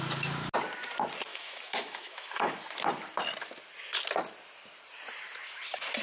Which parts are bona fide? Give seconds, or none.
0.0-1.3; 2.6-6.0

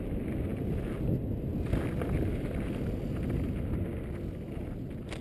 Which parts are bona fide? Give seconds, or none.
0.0-5.2